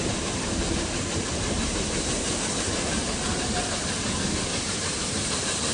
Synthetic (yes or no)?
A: yes